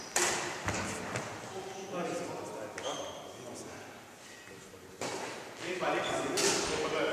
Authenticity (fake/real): real